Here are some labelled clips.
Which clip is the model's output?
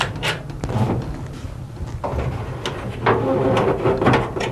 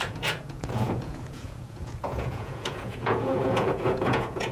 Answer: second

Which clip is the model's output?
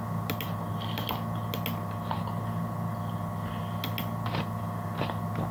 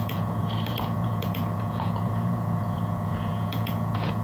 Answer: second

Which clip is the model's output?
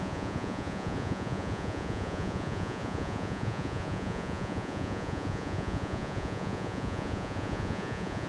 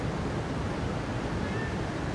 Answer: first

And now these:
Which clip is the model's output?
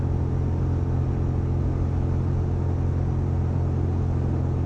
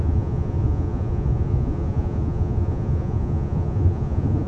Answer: second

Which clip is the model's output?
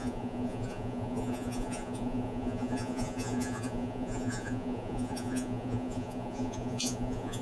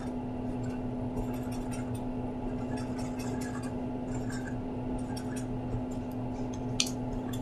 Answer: first